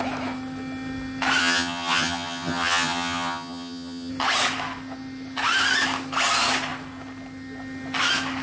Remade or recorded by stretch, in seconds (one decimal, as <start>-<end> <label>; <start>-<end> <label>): 0.0-1.4 recorded; 1.4-4.1 remade; 4.1-8.4 recorded